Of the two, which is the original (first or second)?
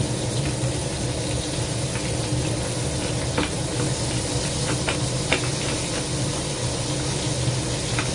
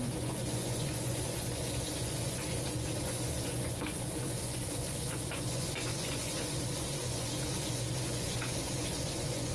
first